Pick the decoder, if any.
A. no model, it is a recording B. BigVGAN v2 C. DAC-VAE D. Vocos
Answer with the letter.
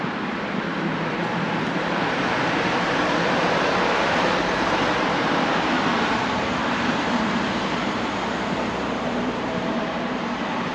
B